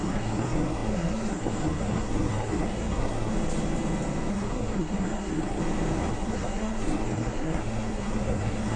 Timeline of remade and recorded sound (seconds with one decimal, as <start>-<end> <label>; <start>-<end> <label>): 0.0-3.3 remade; 3.3-4.3 recorded; 4.3-5.6 remade; 5.6-6.1 recorded; 6.1-8.8 remade